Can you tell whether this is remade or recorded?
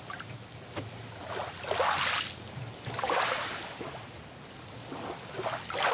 recorded